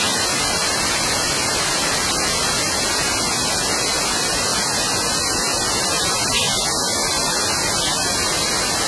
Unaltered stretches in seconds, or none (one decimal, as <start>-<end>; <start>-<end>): 0.0-8.9